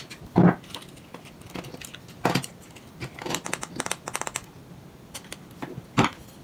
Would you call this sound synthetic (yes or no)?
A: no